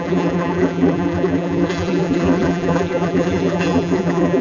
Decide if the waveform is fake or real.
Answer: fake